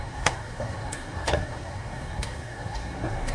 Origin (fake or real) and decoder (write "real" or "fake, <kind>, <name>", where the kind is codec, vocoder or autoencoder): fake, codec, SNAC